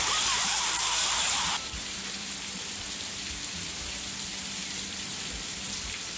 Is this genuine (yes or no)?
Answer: no